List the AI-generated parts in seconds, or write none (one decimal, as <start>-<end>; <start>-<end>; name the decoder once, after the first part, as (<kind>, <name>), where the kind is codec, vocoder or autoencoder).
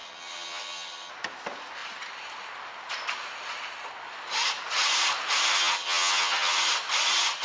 0.0-1.1 (vocoder, HiFi-GAN); 5.5-6.6